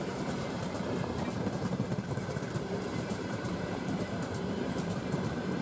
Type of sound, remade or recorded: remade